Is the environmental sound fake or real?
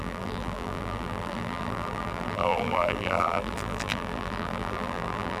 fake